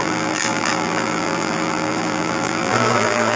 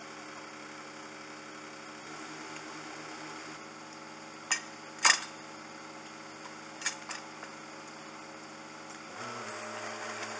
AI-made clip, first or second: first